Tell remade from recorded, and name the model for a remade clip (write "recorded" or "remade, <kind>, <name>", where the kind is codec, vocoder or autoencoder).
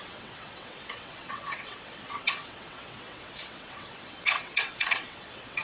remade, vocoder, WaveNeXt